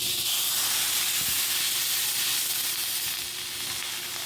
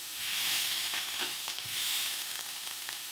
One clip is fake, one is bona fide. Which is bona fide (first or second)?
first